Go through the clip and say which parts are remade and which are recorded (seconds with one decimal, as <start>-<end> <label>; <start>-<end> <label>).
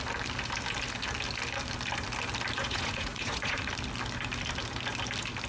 0.0-2.6 recorded; 2.6-3.7 remade; 3.7-5.5 recorded